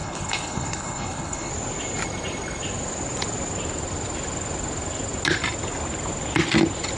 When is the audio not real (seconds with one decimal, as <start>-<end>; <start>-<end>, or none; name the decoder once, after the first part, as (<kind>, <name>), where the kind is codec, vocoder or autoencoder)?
0.0-1.5 (codec, HILCodec)